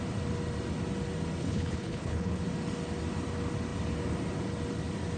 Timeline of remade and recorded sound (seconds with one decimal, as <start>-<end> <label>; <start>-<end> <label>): 0.0-1.4 recorded; 1.4-2.4 remade; 2.4-5.2 recorded